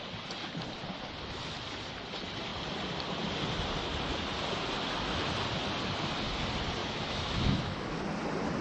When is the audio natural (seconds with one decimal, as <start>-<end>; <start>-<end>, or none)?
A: 0.0-6.8; 8.0-8.6